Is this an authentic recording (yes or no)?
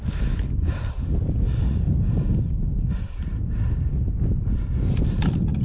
yes